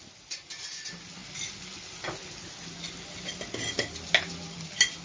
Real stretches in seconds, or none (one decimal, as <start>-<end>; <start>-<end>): 0.0-5.0